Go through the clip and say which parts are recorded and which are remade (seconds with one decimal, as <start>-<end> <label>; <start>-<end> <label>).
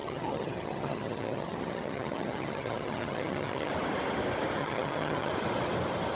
0.0-3.7 remade; 3.7-4.6 recorded; 4.6-5.3 remade; 5.3-6.1 recorded